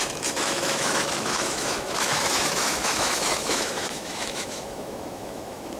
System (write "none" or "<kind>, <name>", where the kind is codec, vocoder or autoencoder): autoencoder, DAC-VAE